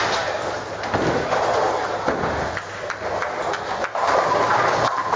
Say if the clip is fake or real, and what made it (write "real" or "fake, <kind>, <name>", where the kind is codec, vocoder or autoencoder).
real